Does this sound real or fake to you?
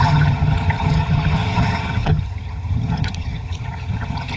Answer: fake